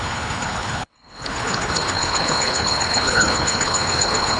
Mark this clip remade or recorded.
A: remade